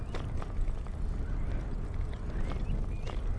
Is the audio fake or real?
real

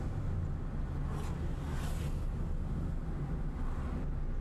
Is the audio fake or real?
real